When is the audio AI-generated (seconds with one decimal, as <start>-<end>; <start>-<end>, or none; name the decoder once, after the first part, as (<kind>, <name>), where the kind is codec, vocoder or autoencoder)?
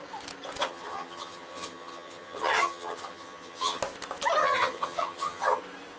0.6-3.8 (vocoder, HiFi-GAN); 4.4-5.6